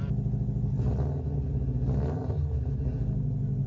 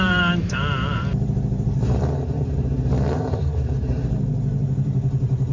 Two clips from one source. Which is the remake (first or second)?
second